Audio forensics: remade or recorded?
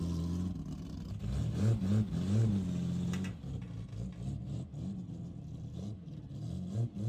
recorded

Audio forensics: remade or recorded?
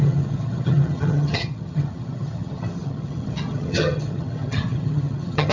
remade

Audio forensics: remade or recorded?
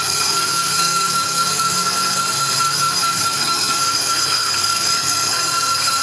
remade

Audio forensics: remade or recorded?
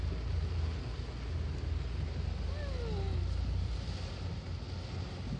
recorded